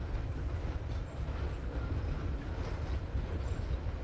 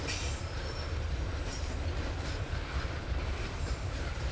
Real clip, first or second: first